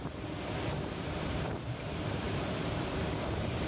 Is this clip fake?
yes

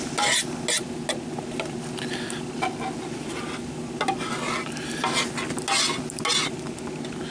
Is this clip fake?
no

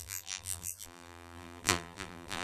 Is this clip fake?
yes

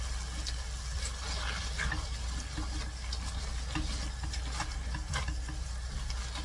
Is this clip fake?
no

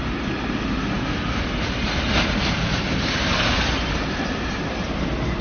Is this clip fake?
no